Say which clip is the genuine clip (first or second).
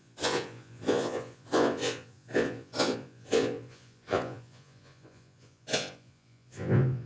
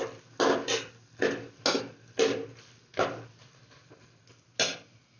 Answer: second